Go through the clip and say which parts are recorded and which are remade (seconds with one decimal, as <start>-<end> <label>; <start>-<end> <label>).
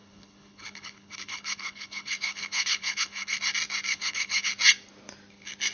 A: 0.0-3.4 remade; 3.4-3.9 recorded; 3.9-4.5 remade; 4.5-5.7 recorded